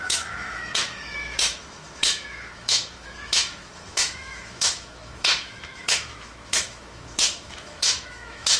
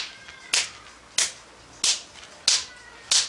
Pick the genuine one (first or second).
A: second